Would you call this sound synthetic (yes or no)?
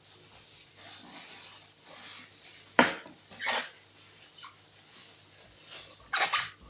no